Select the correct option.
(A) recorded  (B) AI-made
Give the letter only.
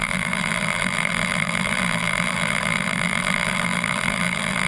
B